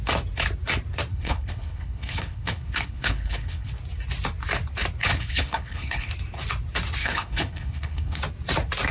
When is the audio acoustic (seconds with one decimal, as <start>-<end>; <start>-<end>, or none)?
0.0-1.1; 3.7-5.0; 6.1-7.0; 8.2-8.9